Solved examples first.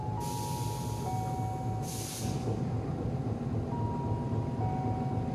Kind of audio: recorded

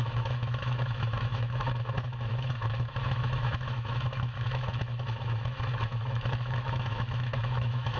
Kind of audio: remade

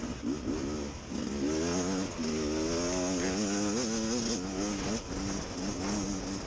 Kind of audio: recorded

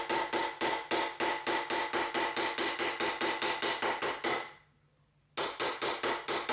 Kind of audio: recorded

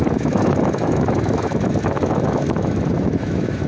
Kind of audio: remade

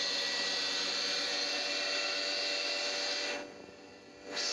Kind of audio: recorded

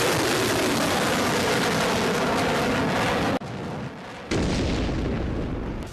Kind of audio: recorded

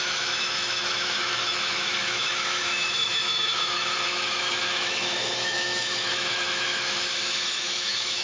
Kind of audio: remade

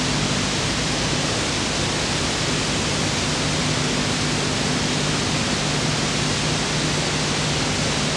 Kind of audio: recorded